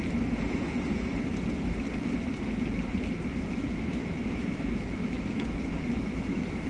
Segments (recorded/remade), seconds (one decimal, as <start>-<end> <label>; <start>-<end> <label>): 0.0-3.3 recorded; 3.3-6.7 remade